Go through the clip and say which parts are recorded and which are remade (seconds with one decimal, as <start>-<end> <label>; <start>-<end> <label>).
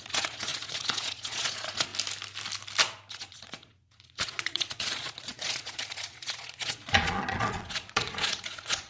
0.0-1.9 remade; 1.9-3.1 recorded; 3.1-8.9 remade